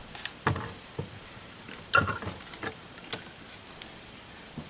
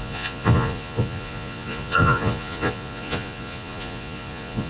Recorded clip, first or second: first